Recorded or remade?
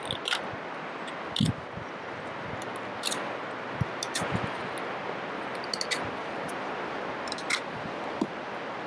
recorded